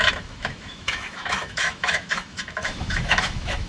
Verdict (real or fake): fake